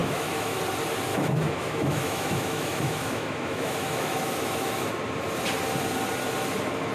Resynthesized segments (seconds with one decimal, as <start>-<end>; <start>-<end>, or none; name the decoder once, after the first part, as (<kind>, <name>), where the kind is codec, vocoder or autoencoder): 0.0-0.6 (autoencoder, DAC-VAE); 1.1-4.9